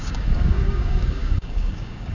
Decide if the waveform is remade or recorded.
remade